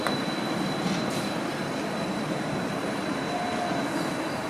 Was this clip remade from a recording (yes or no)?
no